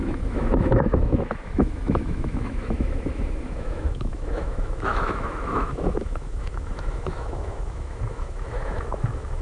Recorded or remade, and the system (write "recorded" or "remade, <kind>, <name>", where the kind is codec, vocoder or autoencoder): remade, autoencoder, DAC-VAE